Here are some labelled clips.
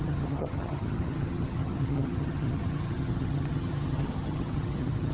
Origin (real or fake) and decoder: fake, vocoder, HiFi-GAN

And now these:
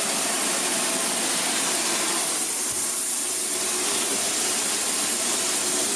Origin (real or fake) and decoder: real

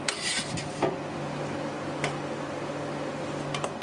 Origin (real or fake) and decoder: real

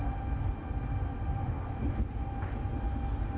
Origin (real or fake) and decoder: real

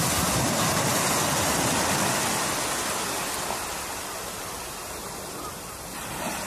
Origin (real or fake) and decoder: real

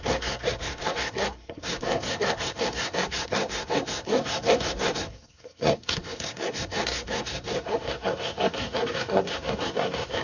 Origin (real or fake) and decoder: fake, codec, SNAC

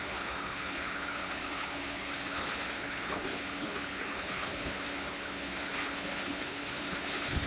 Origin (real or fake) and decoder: fake, codec, HILCodec